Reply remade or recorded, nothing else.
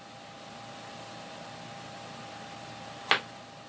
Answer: recorded